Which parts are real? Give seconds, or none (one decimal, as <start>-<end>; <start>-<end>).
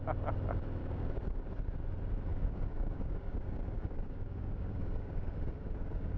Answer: 0.0-0.8; 1.4-2.3